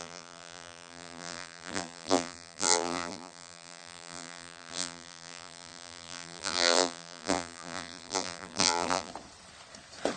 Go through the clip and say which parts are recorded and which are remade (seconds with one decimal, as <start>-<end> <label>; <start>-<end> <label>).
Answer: 0.0-9.1 remade; 9.1-10.2 recorded